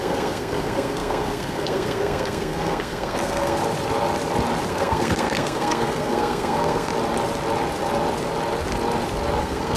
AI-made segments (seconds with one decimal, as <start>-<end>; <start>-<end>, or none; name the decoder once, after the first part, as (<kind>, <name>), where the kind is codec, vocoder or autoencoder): 0.0-3.6 (codec, SNAC); 4.7-6.9; 9.4-9.8